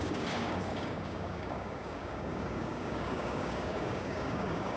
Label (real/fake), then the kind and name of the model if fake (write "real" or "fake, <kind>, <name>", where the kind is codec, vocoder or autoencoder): fake, codec, DAC